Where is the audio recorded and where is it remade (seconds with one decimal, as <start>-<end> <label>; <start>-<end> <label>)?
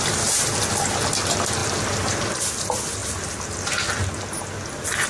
0.0-5.1 recorded